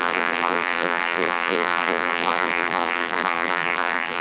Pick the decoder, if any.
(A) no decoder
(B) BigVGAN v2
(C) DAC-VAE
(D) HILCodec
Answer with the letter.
B